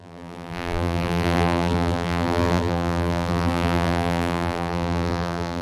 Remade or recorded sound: remade